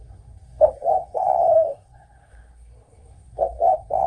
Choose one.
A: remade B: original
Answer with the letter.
A